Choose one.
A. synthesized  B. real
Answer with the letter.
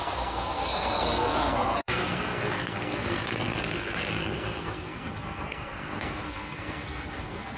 A